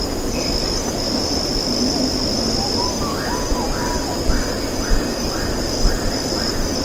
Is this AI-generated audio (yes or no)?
no